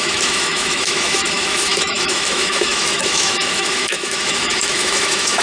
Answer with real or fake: fake